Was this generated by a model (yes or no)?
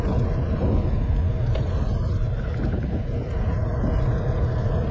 no